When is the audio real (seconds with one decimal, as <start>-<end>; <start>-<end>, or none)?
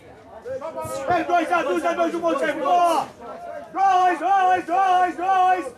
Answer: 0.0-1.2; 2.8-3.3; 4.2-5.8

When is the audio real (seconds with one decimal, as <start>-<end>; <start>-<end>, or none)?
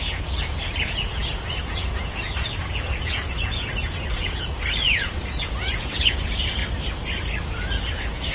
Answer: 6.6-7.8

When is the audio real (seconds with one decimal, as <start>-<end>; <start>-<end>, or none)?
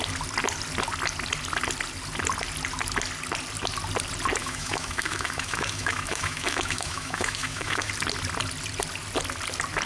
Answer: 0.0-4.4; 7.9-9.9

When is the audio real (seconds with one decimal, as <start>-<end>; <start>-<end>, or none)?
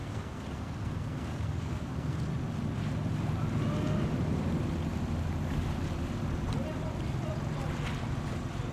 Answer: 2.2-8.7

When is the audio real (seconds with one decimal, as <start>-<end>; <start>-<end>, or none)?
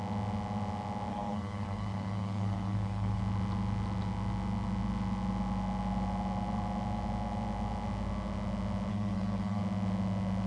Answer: 0.0-1.1; 3.2-8.9; 9.6-10.5